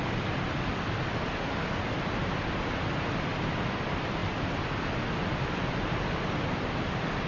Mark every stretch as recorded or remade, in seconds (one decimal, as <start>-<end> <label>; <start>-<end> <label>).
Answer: 0.0-7.3 recorded

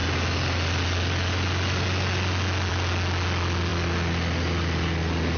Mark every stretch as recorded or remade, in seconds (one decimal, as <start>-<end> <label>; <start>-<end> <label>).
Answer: 0.0-5.4 recorded

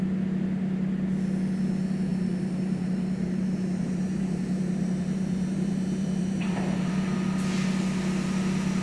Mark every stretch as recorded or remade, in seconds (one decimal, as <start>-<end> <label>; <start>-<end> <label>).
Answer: 0.0-2.1 recorded; 2.1-6.9 remade; 6.9-8.8 recorded

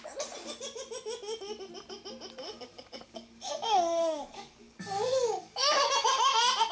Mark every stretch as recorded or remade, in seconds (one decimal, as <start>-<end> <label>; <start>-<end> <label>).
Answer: 0.0-2.4 recorded; 2.4-6.3 remade; 6.3-6.7 recorded

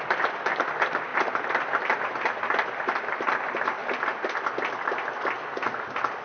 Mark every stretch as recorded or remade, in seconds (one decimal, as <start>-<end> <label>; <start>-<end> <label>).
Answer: 0.0-6.2 recorded

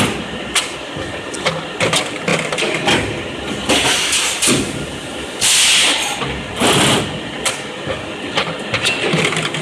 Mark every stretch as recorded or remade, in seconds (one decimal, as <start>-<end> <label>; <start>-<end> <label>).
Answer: 0.0-9.6 recorded

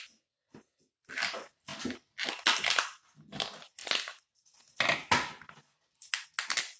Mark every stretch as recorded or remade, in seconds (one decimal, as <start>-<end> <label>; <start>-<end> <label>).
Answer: 0.0-6.8 recorded